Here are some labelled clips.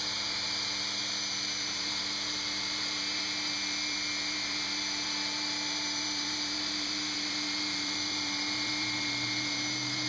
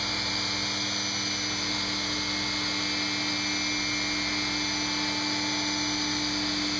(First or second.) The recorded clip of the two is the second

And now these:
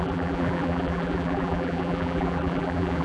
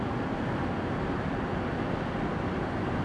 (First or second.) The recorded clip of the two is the second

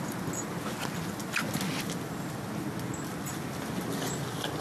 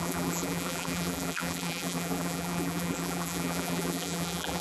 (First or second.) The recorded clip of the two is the first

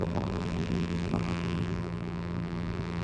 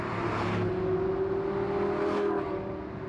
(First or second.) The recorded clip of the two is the second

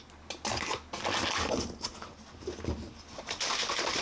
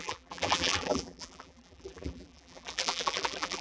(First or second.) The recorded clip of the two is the first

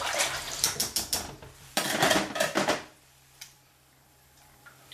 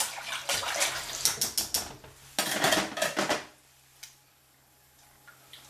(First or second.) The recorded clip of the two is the second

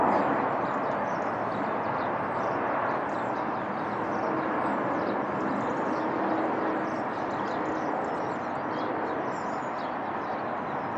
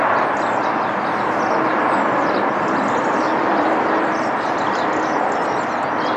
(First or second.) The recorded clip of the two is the first